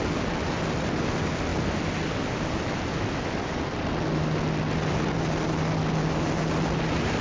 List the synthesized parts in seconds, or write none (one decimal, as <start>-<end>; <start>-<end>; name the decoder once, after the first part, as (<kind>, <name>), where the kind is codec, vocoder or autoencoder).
none